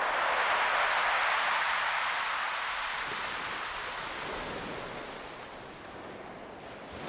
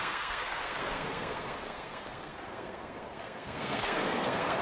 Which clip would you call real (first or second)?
first